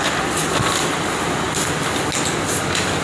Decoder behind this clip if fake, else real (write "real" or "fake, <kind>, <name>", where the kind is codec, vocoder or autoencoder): real